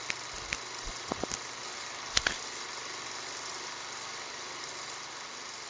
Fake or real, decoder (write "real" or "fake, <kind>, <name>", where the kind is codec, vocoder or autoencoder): real